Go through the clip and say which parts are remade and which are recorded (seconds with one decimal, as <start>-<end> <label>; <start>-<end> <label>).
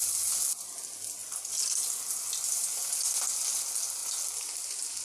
0.0-5.0 recorded